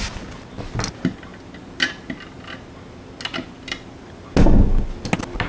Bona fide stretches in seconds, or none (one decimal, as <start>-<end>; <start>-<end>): 0.0-5.5